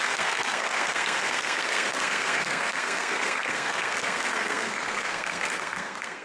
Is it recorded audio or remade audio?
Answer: remade